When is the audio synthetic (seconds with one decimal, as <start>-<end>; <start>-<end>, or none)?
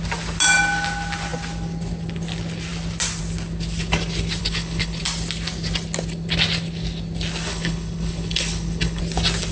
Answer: 4.4-5.0; 7.5-9.0